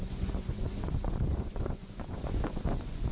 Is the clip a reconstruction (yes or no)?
yes